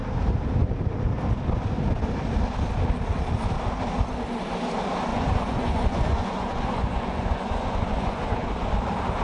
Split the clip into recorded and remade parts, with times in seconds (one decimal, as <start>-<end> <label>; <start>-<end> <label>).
0.0-5.1 recorded; 5.1-8.7 remade; 8.7-9.2 recorded